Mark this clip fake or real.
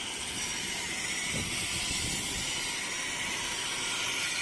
real